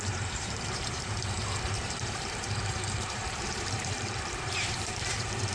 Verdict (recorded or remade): remade